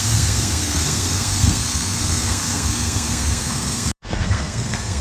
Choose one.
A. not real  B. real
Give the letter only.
A